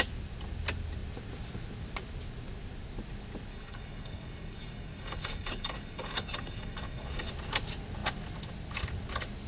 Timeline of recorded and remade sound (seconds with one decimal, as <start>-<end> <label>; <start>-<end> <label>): 0.0-3.5 recorded; 3.5-7.3 remade; 7.3-9.5 recorded